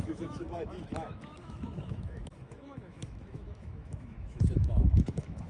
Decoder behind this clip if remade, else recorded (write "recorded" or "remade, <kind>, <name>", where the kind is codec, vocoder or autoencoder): remade, autoencoder, DAC-VAE